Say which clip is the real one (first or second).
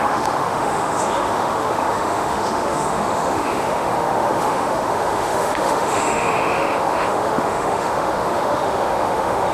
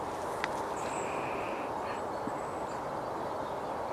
second